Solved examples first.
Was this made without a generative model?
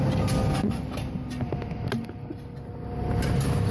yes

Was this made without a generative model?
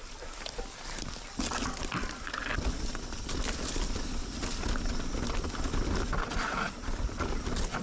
yes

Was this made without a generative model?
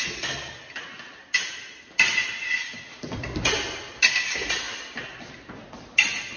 yes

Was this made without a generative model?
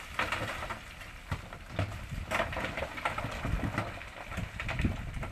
yes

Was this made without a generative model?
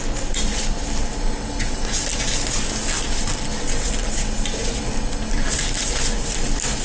yes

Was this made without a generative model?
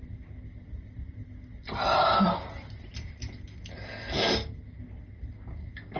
yes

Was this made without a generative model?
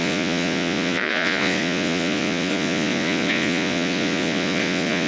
no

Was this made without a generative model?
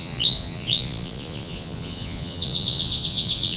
no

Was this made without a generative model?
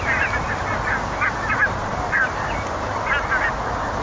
yes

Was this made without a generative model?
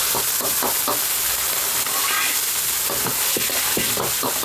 yes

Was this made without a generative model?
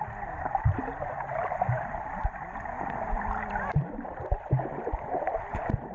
no